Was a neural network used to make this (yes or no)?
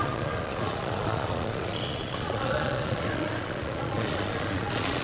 yes